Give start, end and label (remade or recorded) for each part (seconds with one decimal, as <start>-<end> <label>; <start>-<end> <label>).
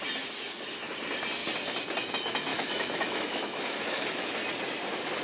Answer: 0.0-2.5 recorded; 2.5-4.3 remade; 4.3-5.2 recorded